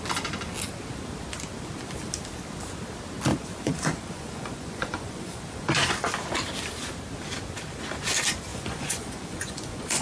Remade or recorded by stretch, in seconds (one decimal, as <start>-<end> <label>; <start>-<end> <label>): 0.0-3.3 recorded; 3.3-6.1 remade; 6.1-8.5 recorded; 8.5-10.0 remade